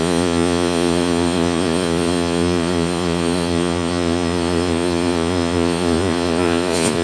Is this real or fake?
fake